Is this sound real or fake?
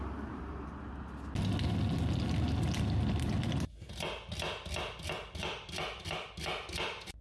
real